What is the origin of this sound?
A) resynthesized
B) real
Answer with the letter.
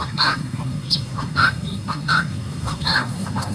A